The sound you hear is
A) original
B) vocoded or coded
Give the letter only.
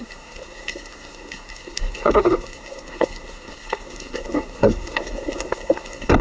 B